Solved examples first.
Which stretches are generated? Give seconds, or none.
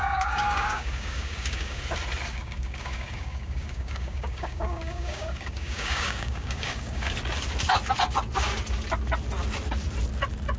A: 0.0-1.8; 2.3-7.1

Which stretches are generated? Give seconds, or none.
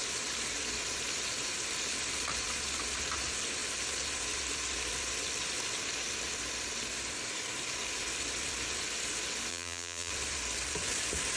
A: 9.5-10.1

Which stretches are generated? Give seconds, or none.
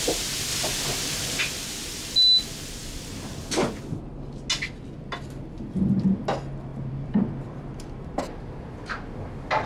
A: 0.5-1.4; 2.8-3.4; 6.7-8.9